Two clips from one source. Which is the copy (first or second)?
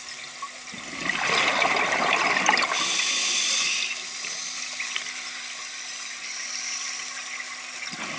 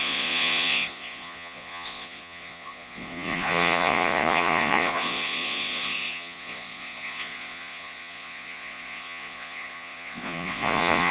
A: second